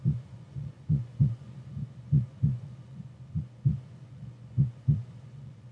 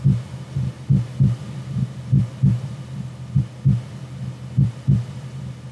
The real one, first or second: second